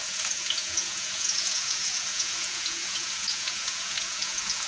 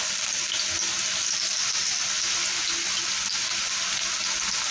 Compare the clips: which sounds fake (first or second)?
first